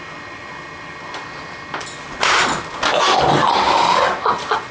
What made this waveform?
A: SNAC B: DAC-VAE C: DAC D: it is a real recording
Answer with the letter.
D